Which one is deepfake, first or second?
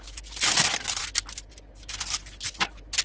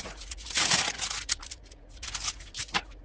second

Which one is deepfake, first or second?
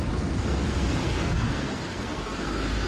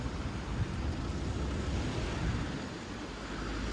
first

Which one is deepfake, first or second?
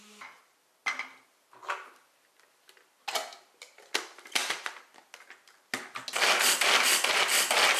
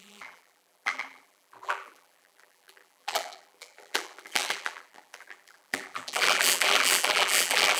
second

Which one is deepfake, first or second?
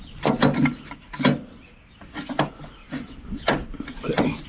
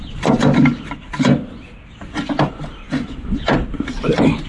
second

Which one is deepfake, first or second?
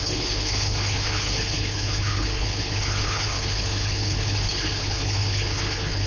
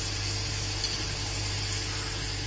first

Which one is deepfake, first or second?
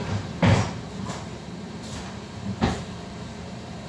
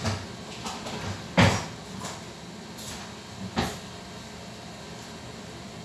first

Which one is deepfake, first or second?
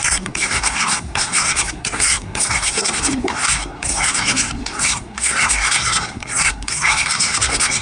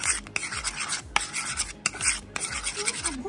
first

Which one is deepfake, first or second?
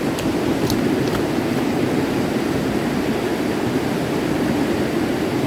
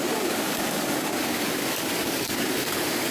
second